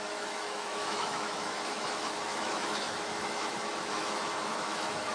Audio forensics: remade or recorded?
remade